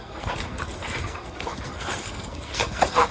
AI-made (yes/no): yes